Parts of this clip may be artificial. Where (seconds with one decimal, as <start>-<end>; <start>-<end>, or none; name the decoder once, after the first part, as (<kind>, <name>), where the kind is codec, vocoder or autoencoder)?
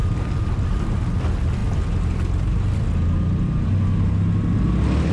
none